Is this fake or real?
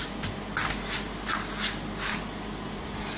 real